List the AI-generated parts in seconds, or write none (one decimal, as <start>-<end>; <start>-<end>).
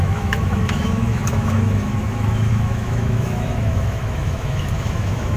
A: 0.0-5.4